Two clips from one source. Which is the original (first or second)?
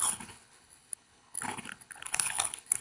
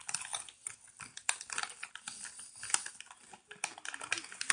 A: second